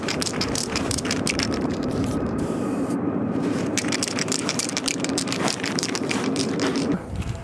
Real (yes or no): no